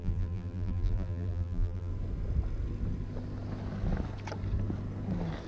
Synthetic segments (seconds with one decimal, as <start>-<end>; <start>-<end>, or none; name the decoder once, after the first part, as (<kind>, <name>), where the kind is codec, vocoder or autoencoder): 0.0-1.9 (vocoder, BigVGAN v2)